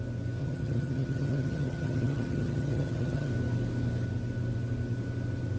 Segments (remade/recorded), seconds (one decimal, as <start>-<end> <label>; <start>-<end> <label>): 0.0-0.4 recorded; 0.4-3.3 remade; 3.3-5.6 recorded